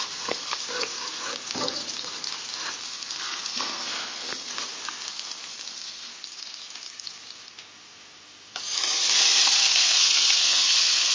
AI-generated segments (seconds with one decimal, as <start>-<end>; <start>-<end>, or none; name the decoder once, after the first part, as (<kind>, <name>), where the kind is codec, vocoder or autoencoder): 0.0-0.6 (codec, SNAC); 2.8-4.5; 5.1-6.1; 9.6-11.1